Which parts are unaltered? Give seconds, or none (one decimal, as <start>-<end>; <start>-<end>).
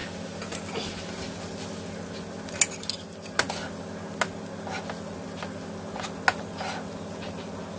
0.0-7.8